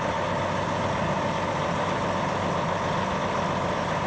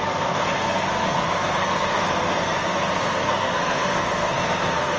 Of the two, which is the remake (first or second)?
second